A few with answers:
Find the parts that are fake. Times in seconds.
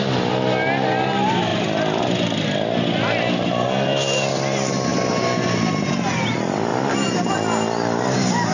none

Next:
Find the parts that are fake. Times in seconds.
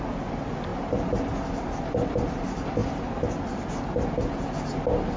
none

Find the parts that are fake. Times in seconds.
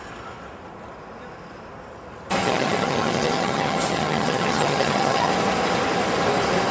2.4-5.3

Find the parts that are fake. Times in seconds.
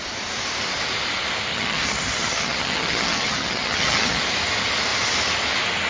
1.5-4.2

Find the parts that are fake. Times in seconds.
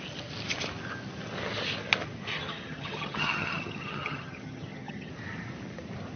2.3-5.1